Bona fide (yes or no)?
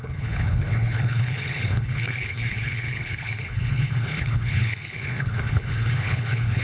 no